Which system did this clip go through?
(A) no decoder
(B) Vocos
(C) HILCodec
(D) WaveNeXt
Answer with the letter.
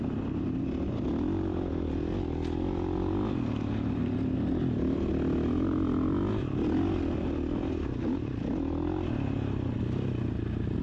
A